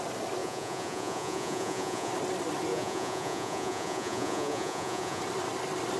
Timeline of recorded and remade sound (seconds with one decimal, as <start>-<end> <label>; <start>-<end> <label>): 0.0-0.4 recorded; 0.4-2.1 remade; 2.1-2.7 recorded; 2.7-5.2 remade; 5.2-6.0 recorded